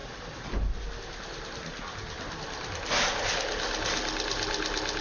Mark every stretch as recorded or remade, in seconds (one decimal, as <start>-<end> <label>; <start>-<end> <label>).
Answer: 0.0-5.0 recorded